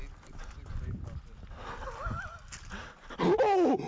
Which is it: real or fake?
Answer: real